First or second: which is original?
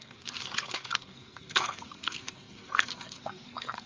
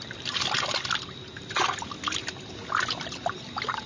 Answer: second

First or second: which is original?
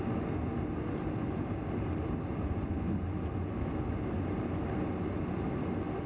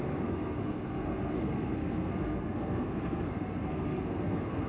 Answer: first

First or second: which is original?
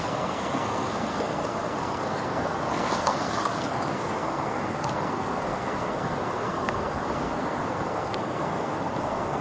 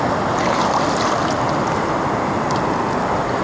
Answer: second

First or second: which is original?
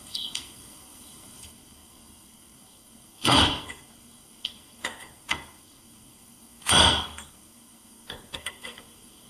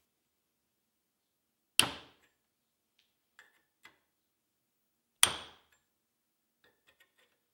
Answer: second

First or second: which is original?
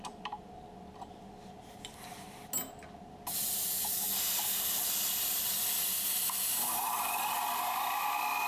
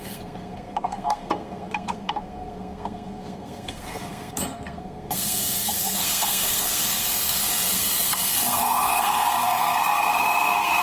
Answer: first